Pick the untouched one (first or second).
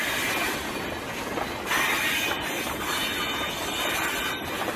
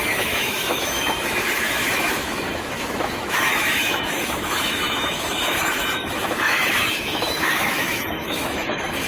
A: first